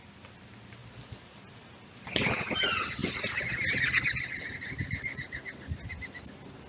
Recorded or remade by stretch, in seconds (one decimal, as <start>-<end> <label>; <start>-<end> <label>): 0.0-6.7 recorded